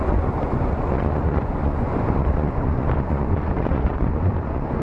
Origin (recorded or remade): remade